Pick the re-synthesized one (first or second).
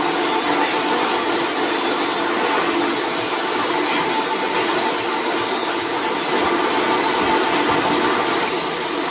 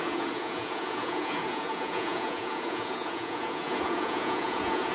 second